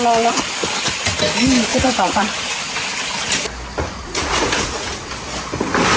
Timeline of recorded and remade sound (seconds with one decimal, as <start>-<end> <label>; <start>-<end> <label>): 0.0-1.7 recorded; 1.7-2.2 remade; 2.2-4.0 recorded; 4.0-5.1 remade; 5.1-6.0 recorded